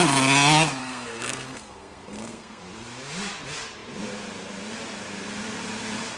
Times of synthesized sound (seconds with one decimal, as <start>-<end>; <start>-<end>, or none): 0.8-2.6